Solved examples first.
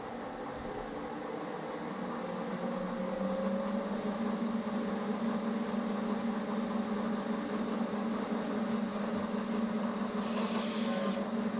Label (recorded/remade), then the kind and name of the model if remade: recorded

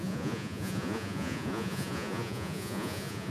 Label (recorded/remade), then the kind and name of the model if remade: remade, vocoder, Vocos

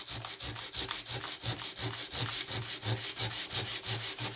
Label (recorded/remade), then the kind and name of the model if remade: recorded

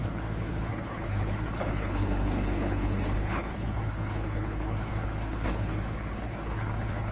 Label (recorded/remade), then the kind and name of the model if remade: remade, codec, HILCodec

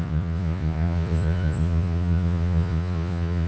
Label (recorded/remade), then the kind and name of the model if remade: remade, vocoder, Vocos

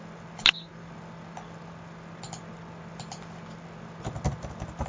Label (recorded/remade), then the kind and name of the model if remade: recorded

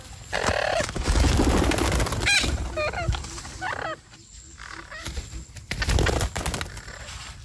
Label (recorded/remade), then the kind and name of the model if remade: recorded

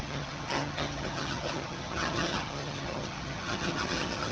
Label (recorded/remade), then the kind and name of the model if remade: remade, vocoder, HiFi-GAN